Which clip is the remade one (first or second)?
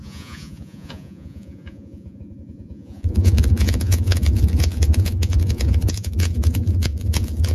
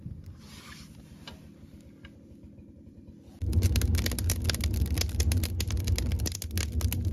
first